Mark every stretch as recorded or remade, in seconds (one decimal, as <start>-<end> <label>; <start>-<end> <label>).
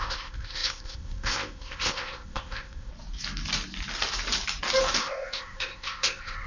0.0-2.9 remade; 2.9-5.0 recorded; 5.0-6.5 remade